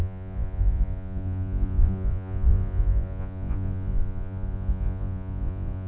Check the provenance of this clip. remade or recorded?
remade